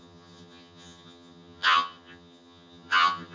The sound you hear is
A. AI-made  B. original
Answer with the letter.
A